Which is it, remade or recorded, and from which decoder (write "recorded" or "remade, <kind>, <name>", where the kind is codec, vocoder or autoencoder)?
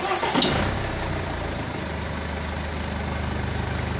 recorded